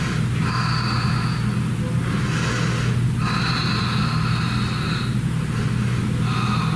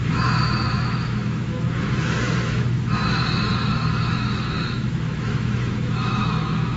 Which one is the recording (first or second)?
first